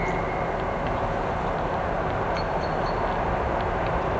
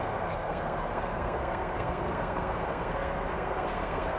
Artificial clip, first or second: second